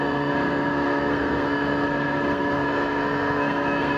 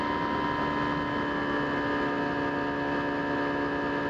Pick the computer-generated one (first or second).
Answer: first